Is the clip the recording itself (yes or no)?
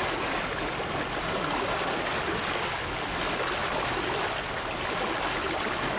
yes